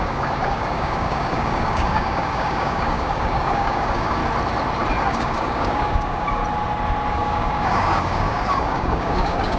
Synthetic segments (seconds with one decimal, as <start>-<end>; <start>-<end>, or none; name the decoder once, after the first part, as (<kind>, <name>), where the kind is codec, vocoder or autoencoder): 0.0-4.2 (codec, DAC); 5.1-6.4; 7.1-9.6